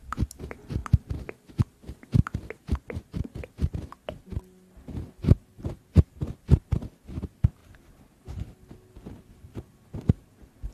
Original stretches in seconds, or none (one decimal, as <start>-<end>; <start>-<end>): 0.0-10.7